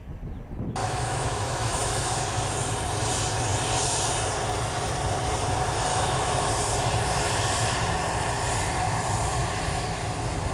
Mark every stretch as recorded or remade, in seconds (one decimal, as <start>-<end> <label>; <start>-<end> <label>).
0.0-0.8 recorded; 0.8-2.2 remade; 2.2-5.9 recorded; 5.9-6.5 remade; 6.5-10.5 recorded